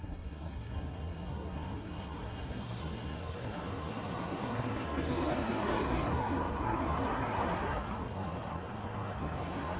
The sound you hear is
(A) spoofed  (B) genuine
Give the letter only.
A